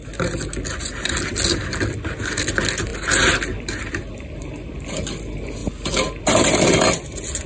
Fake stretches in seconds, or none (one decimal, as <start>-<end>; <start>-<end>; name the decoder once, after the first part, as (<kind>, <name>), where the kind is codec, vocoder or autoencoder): none